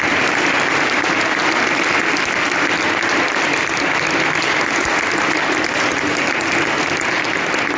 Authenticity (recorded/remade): recorded